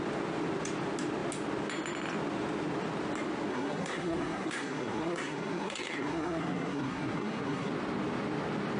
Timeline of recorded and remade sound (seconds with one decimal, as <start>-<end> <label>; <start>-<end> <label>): 0.0-3.5 recorded; 3.5-7.7 remade; 7.7-8.8 recorded